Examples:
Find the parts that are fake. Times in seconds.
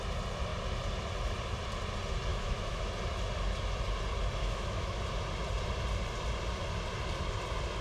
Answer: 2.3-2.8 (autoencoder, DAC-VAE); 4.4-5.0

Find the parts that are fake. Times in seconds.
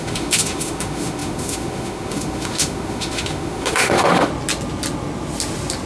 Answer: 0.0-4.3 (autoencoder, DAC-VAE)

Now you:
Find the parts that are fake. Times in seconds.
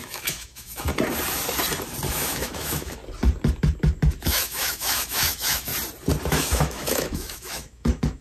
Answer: 0.0-0.9 (autoencoder, DAC-VAE); 2.1-3.0; 4.2-5.7; 6.3-8.2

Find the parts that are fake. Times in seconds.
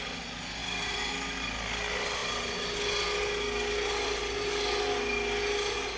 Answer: none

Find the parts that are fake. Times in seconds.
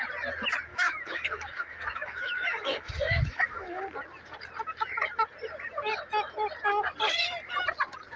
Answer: 0.7-3.8 (autoencoder, DAC-VAE)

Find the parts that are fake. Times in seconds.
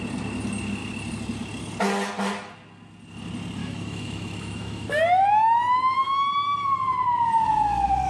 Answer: 3.6-4.9 (autoencoder, DAC-VAE)